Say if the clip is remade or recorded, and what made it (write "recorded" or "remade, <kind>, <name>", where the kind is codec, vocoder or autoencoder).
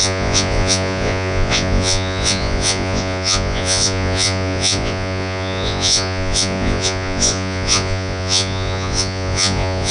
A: remade, vocoder, Vocos